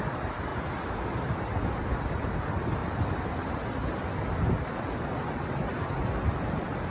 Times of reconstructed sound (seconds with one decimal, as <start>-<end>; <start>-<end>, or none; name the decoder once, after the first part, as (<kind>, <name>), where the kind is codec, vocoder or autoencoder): 0.0-0.5 (vocoder, BigVGAN v2); 2.1-2.8; 3.3-3.8; 5.1-5.7; 6.4-6.9